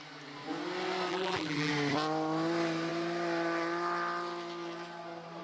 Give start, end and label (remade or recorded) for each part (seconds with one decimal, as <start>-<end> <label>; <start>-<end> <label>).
0.0-1.1 recorded; 1.1-1.7 remade; 1.7-5.4 recorded